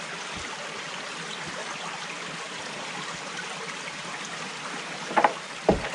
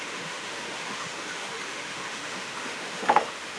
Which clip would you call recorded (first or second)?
first